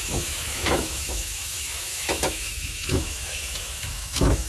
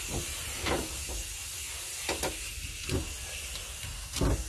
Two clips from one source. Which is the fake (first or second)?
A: first